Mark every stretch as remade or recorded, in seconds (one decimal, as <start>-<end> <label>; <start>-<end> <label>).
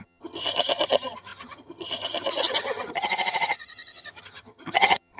0.0-5.2 remade